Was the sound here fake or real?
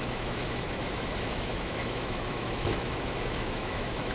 fake